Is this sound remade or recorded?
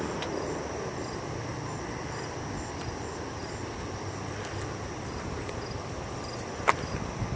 recorded